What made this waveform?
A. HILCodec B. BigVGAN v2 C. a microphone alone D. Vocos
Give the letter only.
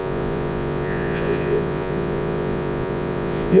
D